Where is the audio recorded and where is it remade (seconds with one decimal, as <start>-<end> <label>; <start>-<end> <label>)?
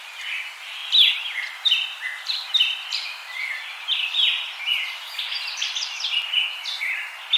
0.0-0.8 recorded; 0.8-4.6 remade; 4.6-7.4 recorded